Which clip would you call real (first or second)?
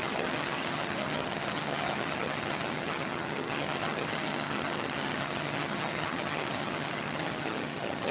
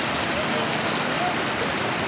second